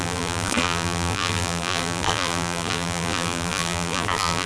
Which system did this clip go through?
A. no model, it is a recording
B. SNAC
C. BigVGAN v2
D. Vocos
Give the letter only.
C